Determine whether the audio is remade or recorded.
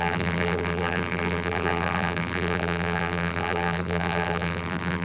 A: remade